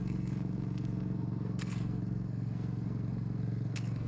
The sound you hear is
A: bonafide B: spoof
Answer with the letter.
B